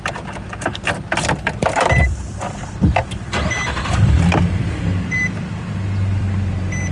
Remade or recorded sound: remade